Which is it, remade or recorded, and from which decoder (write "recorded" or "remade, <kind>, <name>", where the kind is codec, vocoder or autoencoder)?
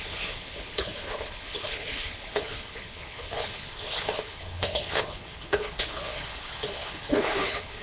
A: remade, codec, HILCodec